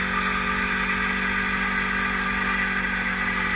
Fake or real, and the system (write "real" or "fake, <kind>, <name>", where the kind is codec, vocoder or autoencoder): real